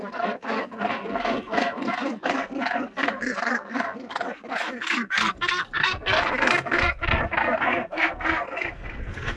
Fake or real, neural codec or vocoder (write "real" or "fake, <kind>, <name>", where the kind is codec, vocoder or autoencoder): fake, codec, SNAC